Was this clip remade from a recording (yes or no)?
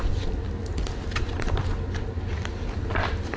no